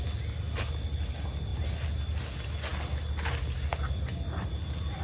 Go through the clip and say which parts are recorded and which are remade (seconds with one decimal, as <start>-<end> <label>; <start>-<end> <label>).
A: 0.0-5.0 recorded